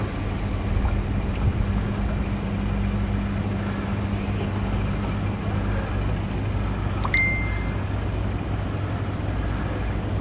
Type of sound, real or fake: real